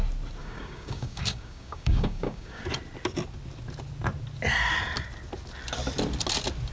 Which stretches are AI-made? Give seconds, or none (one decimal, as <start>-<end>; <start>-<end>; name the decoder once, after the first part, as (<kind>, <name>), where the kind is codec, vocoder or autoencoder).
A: 0.4-2.6 (codec, DAC)